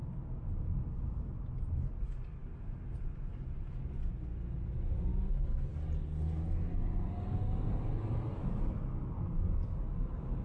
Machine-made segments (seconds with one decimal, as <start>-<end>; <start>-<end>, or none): none